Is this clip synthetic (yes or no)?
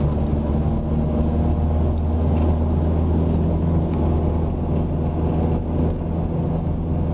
no